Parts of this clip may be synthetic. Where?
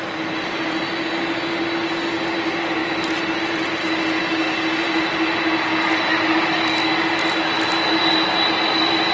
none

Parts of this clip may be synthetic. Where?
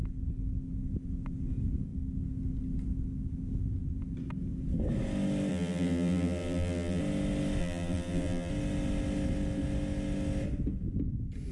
5.5-7.0 (vocoder, BigVGAN v2); 7.6-8.5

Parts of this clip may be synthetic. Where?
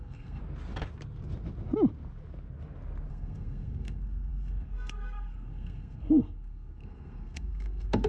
0.0-0.4 (codec, SNAC); 3.1-8.1